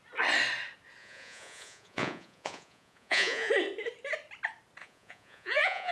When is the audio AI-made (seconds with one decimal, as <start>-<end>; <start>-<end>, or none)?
1.0-3.5; 4.8-5.9